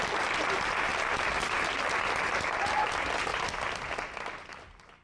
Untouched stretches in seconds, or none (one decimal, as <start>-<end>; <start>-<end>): 0.0-5.0